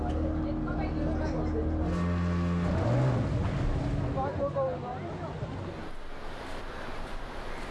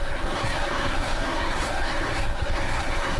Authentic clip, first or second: first